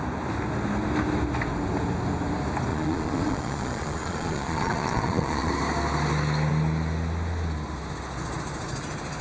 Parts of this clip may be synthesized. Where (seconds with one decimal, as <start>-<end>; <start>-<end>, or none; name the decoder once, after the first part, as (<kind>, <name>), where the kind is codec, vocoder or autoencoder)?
2.7-5.5 (vocoder, Vocos)